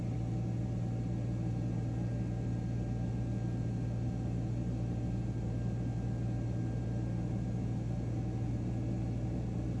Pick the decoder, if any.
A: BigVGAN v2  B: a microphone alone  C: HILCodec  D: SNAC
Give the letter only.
B